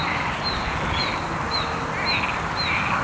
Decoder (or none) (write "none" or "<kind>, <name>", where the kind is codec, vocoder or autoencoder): vocoder, BigVGAN v2